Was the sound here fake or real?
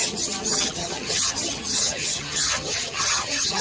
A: fake